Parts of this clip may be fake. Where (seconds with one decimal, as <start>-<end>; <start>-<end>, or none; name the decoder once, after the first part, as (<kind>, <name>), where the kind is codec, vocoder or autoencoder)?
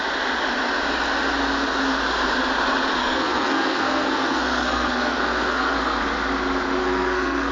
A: 3.0-6.0 (codec, SNAC); 6.8-7.5